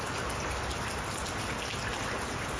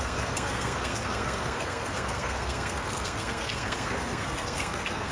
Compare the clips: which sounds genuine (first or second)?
first